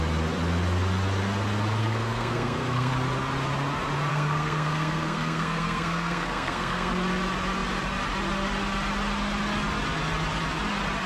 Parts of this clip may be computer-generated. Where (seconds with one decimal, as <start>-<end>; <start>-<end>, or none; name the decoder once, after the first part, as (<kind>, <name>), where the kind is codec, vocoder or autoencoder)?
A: 1.8-2.9 (codec, SNAC); 4.1-6.9